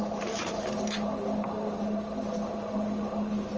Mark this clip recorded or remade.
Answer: recorded